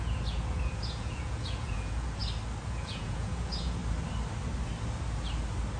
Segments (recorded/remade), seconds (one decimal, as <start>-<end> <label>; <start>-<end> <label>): 0.0-2.2 remade; 2.2-2.7 recorded; 2.7-3.8 remade; 3.8-5.8 recorded